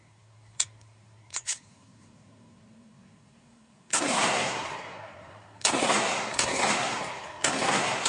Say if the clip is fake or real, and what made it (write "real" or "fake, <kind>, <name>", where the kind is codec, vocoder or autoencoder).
fake, codec, SNAC